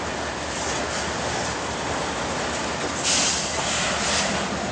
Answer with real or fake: real